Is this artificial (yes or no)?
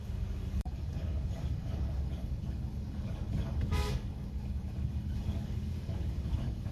yes